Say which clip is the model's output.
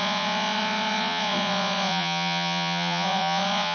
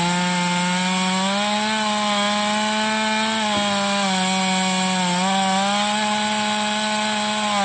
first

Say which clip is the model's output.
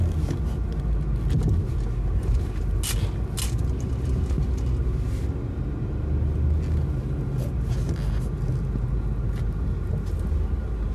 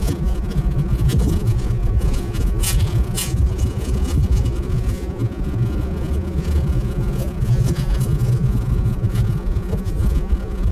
second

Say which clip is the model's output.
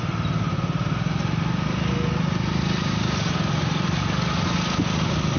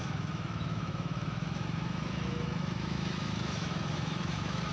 second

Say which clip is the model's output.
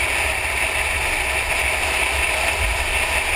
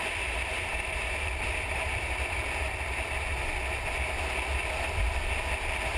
second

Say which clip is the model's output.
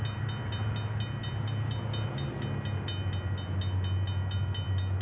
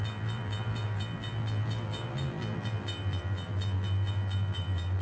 second